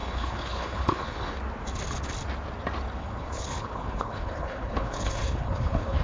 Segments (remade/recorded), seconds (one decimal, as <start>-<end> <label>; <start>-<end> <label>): 0.0-1.4 remade; 1.4-3.0 recorded; 3.0-6.0 remade